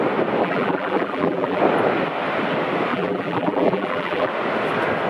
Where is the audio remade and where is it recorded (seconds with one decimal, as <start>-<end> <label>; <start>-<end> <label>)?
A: 0.0-0.4 recorded; 0.4-1.6 remade; 1.6-2.9 recorded; 2.9-4.3 remade; 4.3-5.1 recorded